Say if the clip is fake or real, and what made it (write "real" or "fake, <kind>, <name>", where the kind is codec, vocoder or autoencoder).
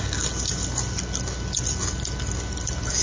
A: real